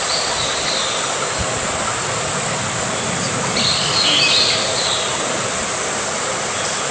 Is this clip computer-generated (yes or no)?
no